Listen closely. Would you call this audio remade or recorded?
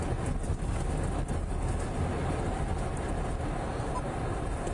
recorded